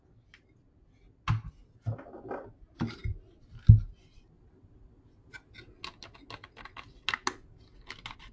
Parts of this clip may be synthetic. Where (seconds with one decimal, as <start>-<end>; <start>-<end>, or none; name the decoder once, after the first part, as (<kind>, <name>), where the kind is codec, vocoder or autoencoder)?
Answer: none